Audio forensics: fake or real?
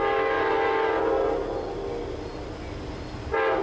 real